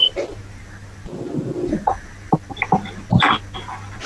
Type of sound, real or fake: real